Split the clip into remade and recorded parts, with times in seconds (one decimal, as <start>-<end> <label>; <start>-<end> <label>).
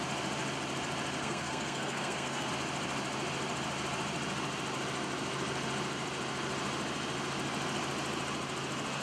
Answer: 0.0-1.2 recorded; 1.2-2.5 remade; 2.5-9.0 recorded